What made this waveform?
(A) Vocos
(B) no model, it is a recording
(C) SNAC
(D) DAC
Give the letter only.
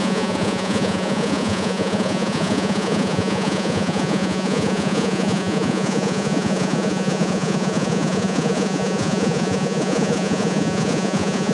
A